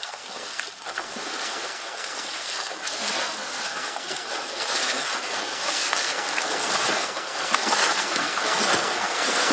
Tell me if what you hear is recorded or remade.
remade